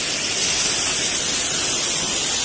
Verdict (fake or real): real